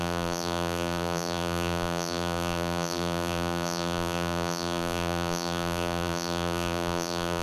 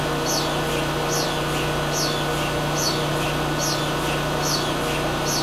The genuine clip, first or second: second